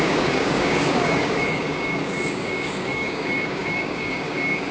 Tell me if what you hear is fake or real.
fake